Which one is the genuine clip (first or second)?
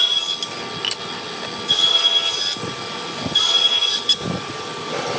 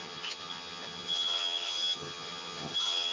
first